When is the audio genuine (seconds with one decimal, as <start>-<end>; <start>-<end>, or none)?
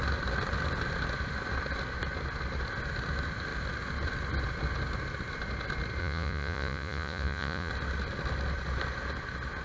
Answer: 0.0-6.0; 7.7-9.6